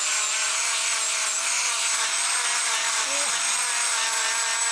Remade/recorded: recorded